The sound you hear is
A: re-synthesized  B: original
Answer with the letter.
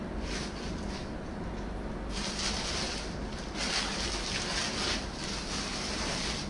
B